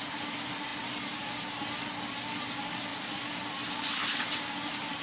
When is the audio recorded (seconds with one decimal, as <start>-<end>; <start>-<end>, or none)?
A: 0.0-5.0